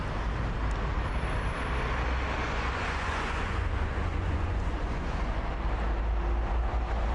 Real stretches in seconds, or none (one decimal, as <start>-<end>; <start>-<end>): 0.0-2.4; 5.4-7.1